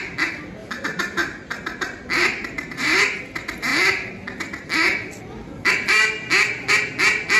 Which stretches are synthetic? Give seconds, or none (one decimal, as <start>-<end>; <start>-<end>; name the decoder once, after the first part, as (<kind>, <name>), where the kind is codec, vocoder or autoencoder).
0.6-3.2 (vocoder, BigVGAN v2)